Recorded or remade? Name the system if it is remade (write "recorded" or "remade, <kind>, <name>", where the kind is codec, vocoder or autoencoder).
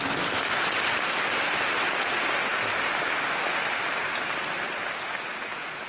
recorded